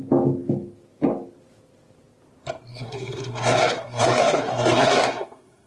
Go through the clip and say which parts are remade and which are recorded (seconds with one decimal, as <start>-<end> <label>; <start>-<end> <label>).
0.0-2.7 recorded; 2.7-5.7 remade

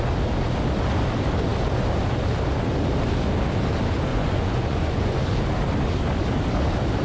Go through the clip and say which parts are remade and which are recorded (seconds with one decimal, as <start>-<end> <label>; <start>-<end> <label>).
0.0-4.1 recorded; 4.1-5.2 remade; 5.2-7.0 recorded

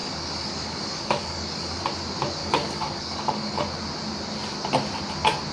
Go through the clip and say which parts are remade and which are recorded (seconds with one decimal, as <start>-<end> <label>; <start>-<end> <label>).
0.0-1.8 remade; 1.8-2.4 recorded; 2.4-3.6 remade; 3.6-5.5 recorded

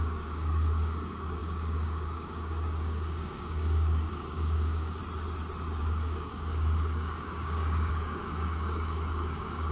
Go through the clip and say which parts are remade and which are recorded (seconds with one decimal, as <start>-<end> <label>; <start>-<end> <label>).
0.0-5.0 remade; 5.0-5.8 recorded; 5.8-9.7 remade

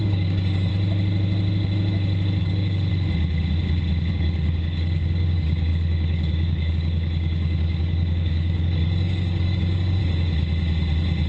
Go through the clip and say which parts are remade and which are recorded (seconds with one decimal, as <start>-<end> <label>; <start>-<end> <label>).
0.0-0.7 remade; 0.7-2.4 recorded; 2.4-2.9 remade; 2.9-4.1 recorded; 4.1-10.0 remade; 10.0-11.3 recorded